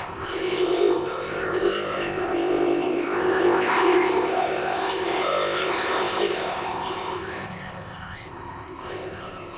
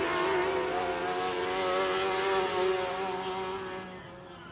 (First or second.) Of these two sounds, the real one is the second